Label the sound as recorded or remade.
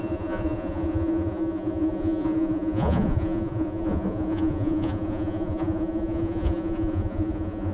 remade